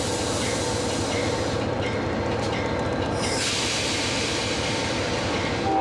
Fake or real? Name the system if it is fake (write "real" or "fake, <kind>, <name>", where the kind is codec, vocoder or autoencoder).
real